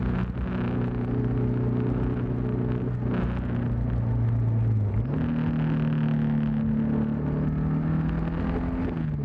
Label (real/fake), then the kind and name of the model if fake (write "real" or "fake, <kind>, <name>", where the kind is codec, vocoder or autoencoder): real